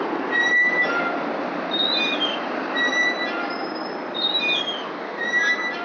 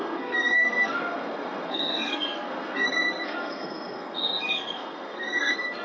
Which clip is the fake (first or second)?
second